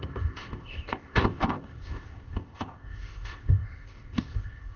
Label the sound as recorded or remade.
remade